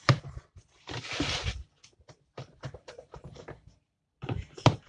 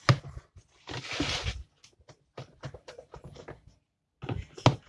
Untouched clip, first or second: second